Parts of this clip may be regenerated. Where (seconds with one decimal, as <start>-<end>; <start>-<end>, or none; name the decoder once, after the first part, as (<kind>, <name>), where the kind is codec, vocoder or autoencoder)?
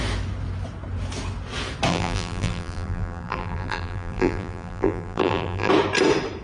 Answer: 1.9-5.7 (vocoder, BigVGAN v2)